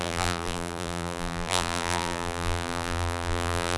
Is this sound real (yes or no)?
no